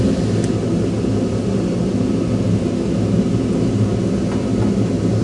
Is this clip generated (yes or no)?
no